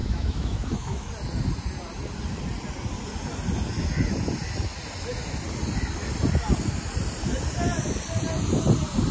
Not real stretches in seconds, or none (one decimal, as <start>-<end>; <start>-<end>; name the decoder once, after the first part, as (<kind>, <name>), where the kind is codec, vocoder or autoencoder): 0.0-1.1 (autoencoder, DAC-VAE)